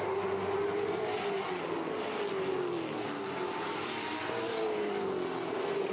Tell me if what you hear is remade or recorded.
recorded